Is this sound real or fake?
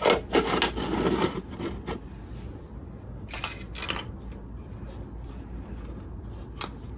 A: real